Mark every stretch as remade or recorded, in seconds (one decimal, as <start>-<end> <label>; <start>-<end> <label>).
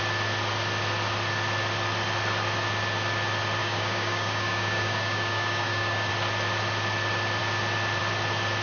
0.0-3.6 recorded; 3.6-6.1 remade; 6.1-8.6 recorded